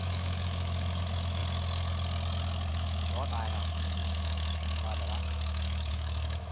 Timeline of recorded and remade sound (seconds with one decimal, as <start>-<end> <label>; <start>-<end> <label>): 0.0-1.4 remade; 1.4-2.7 recorded; 2.7-6.5 remade